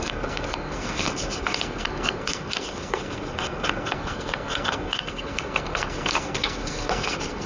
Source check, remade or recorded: remade